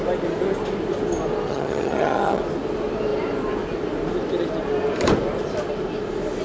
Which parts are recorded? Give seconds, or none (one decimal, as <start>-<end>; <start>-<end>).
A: 0.0-1.5; 2.4-6.4